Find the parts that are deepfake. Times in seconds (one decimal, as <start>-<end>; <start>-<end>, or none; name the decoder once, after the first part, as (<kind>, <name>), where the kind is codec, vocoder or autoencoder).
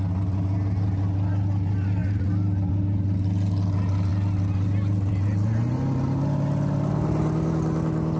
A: none